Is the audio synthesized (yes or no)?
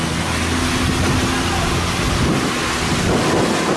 no